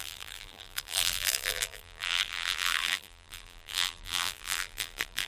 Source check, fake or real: fake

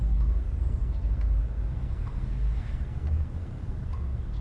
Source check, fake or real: fake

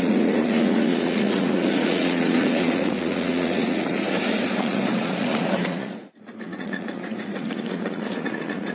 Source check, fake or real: fake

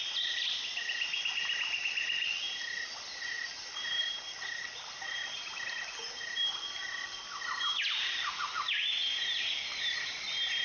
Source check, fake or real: real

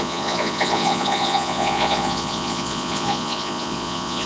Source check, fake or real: fake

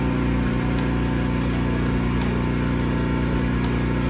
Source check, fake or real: real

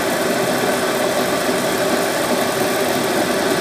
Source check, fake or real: real